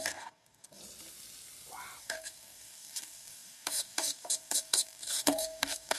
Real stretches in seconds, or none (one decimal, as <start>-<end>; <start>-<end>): 0.8-2.0